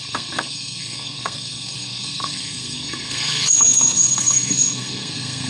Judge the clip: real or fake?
fake